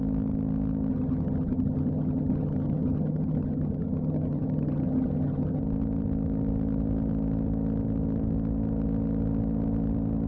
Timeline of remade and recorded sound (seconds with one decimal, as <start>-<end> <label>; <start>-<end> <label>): 0.0-0.9 recorded; 0.9-5.6 remade; 5.6-10.3 recorded

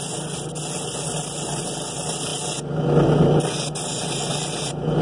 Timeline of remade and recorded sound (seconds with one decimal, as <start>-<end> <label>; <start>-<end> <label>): 0.0-5.0 recorded

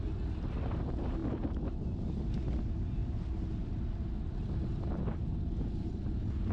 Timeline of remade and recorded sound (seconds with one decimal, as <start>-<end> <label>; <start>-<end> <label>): 0.0-6.5 recorded

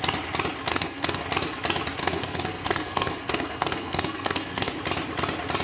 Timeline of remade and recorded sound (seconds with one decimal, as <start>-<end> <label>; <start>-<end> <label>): 0.0-0.7 recorded; 0.7-1.2 remade; 1.2-2.0 recorded; 2.0-4.7 remade; 4.7-5.6 recorded

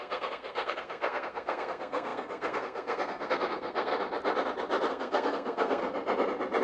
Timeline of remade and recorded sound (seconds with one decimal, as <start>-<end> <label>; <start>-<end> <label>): 0.0-3.9 remade; 3.9-4.9 recorded; 4.9-5.8 remade; 5.8-6.6 recorded

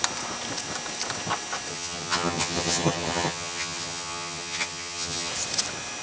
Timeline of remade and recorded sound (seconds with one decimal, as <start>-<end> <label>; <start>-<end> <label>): 0.0-1.7 recorded; 1.7-5.3 remade; 5.3-6.0 recorded

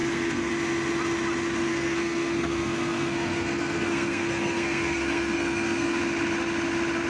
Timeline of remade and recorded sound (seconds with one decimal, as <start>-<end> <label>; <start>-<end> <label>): 0.0-0.5 remade; 0.5-1.7 recorded; 1.7-6.0 remade; 6.0-7.1 recorded

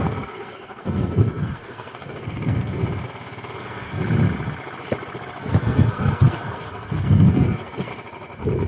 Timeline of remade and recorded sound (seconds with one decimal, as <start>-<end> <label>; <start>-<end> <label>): 0.0-2.8 remade; 2.8-3.6 recorded; 3.6-4.0 remade; 4.0-5.4 recorded; 5.4-7.9 remade; 7.9-8.7 recorded